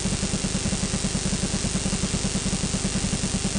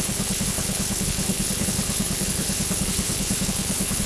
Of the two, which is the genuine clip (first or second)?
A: first